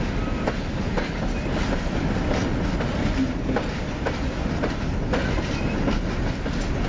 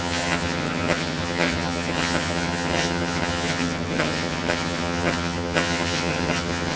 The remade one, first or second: second